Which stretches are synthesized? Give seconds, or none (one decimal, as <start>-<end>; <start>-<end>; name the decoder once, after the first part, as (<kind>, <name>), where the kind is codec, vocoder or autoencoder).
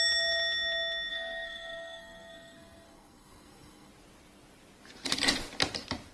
1.1-3.9 (codec, SNAC)